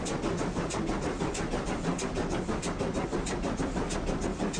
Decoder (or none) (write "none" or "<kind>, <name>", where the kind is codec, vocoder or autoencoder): none